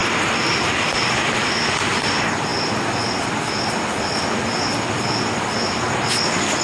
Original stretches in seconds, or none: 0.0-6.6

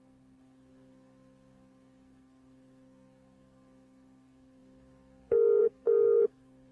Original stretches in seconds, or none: none

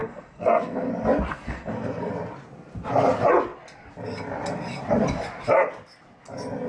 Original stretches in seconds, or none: 0.9-1.3; 2.1-6.7

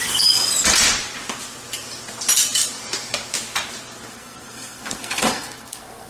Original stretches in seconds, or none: 0.4-4.1

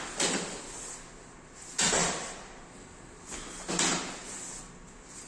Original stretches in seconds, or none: 0.0-5.3

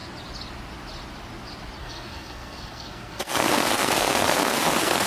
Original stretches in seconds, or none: 0.0-1.8